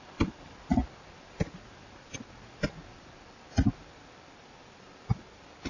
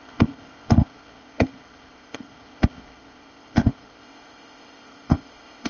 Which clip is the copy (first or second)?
second